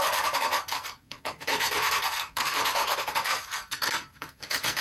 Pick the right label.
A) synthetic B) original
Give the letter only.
A